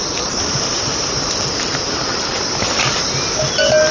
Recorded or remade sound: recorded